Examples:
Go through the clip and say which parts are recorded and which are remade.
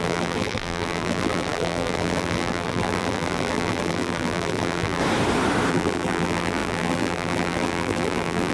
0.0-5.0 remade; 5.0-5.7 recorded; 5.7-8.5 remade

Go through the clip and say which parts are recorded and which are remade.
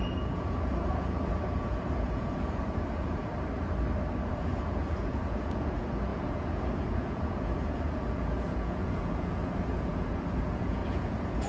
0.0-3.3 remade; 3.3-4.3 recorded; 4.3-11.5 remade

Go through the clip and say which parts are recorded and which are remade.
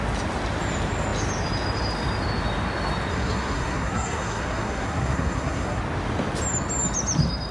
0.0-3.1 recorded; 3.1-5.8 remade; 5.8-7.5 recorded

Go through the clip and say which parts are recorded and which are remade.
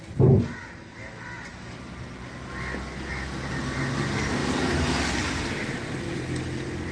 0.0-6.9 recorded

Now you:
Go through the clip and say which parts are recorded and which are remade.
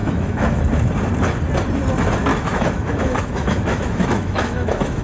0.0-0.6 remade; 0.6-2.3 recorded; 2.3-5.0 remade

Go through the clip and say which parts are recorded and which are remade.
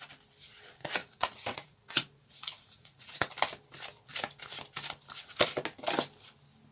0.0-1.0 recorded; 1.0-3.3 remade; 3.3-6.7 recorded